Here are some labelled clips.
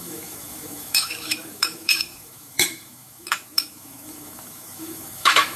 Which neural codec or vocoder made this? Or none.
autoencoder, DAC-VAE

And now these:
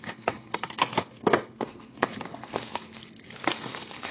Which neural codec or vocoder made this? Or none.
codec, SNAC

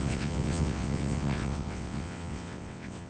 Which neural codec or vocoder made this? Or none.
vocoder, WaveNeXt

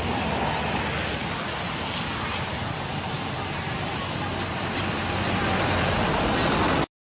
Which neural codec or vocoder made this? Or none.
none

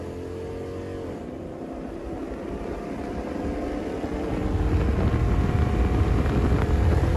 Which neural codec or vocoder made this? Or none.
none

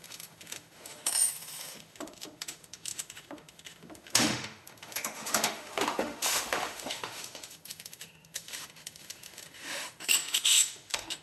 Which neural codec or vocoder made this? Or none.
autoencoder, DAC-VAE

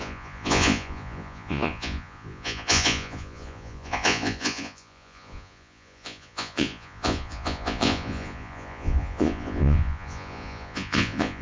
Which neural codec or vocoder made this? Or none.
vocoder, Vocos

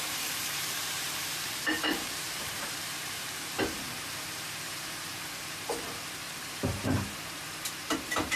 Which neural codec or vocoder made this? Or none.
vocoder, BigVGAN v2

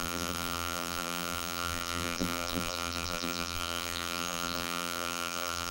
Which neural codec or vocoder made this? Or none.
vocoder, BigVGAN v2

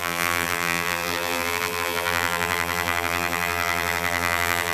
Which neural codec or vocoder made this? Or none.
vocoder, BigVGAN v2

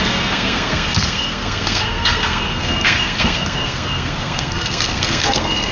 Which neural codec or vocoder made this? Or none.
codec, SNAC